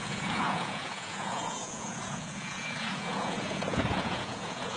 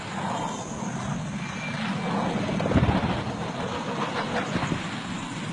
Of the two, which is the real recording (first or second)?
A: second